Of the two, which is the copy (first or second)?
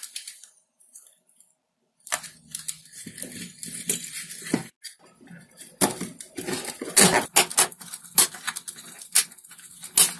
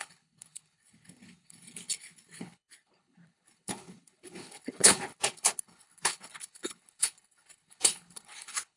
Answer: second